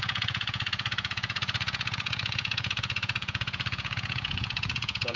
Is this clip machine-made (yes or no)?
yes